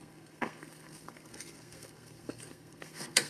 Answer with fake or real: fake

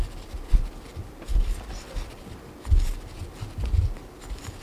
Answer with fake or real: real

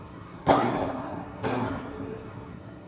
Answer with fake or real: fake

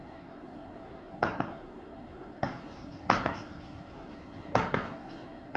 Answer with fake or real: fake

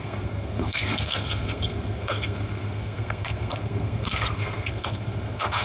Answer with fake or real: fake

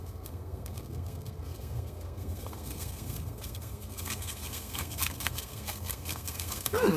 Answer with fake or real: fake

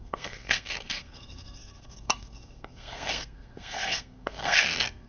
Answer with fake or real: fake